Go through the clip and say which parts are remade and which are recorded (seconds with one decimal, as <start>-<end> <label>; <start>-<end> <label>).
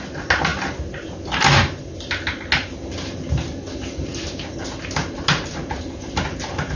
0.0-6.8 recorded